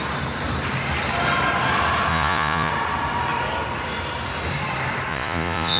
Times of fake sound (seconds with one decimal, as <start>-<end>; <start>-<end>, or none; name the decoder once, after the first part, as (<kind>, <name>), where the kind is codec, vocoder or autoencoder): 2.1-2.7 (vocoder, Vocos); 5.1-5.8